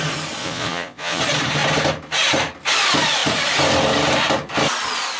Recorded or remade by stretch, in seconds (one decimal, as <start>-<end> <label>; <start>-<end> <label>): 0.0-0.4 recorded; 0.4-1.2 remade; 1.2-5.2 recorded